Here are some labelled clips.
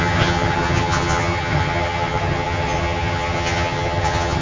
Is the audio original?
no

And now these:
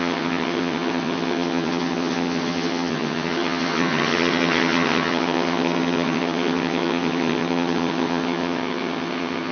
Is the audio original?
no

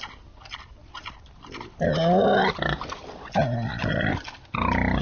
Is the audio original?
yes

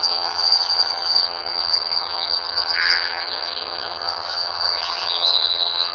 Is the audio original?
no